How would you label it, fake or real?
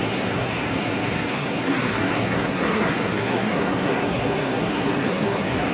fake